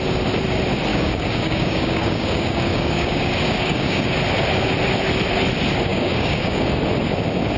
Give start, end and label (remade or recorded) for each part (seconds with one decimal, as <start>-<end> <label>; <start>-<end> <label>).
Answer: 0.0-0.9 recorded; 0.9-4.1 remade; 4.1-5.9 recorded; 5.9-6.8 remade; 6.8-7.6 recorded